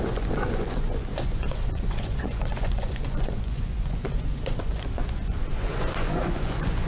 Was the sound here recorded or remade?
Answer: remade